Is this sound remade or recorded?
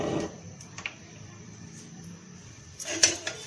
remade